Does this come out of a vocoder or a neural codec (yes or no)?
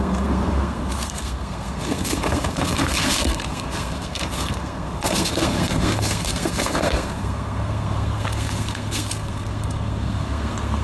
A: yes